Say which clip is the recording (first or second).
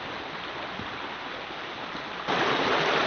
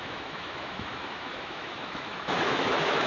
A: first